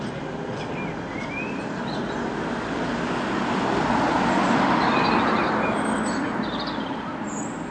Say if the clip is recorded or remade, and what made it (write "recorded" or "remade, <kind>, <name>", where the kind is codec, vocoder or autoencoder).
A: recorded